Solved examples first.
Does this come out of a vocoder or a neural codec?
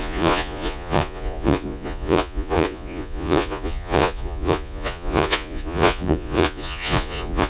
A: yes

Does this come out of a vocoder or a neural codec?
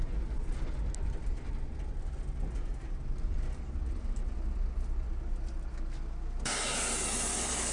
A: no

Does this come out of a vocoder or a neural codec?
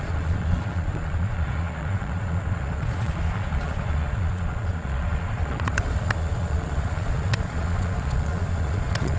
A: yes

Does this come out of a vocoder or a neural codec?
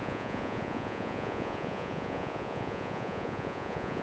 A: yes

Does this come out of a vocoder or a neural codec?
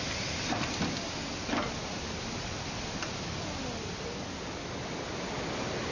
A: no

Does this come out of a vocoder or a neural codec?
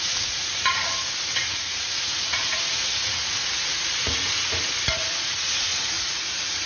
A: yes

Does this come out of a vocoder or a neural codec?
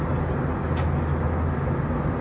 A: no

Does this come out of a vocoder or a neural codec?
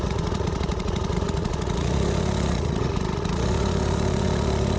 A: yes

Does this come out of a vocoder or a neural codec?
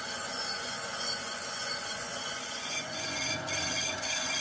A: yes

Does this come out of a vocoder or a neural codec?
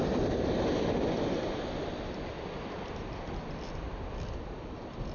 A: no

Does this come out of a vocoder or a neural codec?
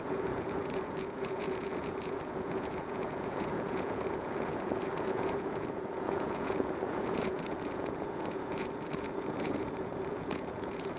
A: yes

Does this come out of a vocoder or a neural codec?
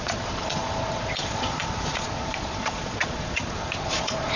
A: yes